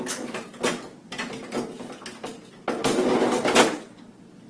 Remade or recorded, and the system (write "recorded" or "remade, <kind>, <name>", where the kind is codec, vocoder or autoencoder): recorded